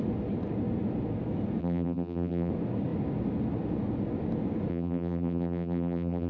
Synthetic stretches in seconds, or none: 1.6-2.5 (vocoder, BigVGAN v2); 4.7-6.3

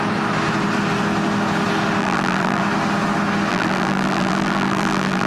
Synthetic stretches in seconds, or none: 2.0-2.6 (vocoder, BigVGAN v2); 3.5-5.3